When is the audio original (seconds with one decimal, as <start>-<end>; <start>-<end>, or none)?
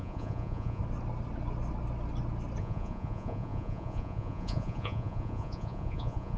0.8-2.6